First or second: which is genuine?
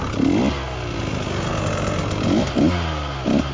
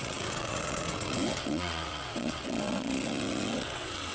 first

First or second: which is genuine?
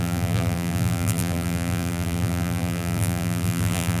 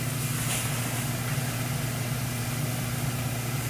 second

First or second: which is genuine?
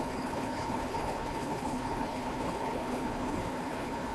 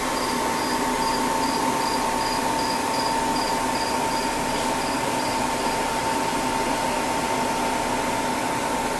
second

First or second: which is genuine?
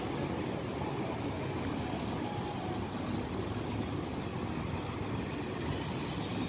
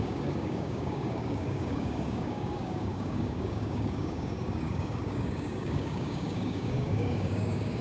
first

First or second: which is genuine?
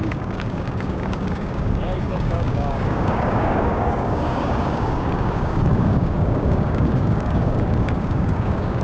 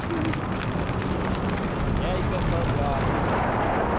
second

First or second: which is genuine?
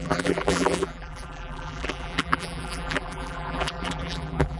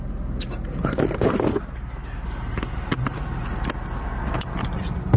second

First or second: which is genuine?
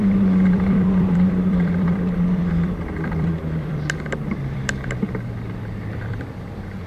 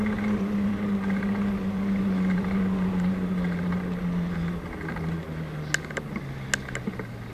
second